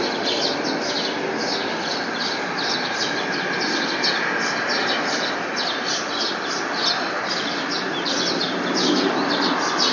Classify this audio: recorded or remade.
recorded